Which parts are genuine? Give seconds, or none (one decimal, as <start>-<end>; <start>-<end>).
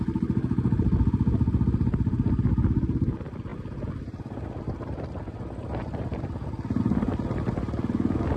0.0-8.4